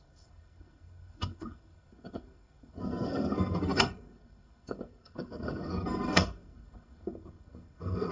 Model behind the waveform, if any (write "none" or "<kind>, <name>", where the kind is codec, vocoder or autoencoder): codec, SNAC